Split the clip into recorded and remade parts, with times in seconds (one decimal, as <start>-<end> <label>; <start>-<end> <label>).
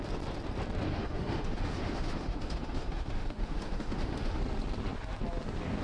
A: 0.0-0.9 recorded; 0.9-4.4 remade; 4.4-5.8 recorded